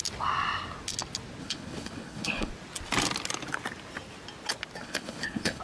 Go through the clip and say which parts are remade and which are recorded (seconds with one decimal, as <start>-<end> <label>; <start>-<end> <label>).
0.0-1.4 recorded; 1.4-2.5 remade; 2.5-4.8 recorded; 4.8-5.6 remade